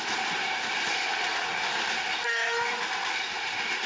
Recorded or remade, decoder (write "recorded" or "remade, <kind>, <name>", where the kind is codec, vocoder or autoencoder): recorded